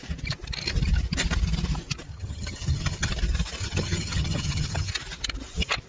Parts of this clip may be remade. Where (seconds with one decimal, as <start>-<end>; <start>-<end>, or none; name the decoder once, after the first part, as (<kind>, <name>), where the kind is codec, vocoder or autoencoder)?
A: 2.1-3.1 (vocoder, HiFi-GAN); 3.6-4.9